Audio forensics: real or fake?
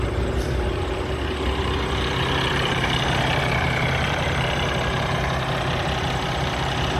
fake